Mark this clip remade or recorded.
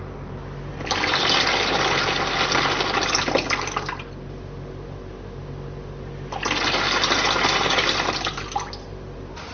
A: recorded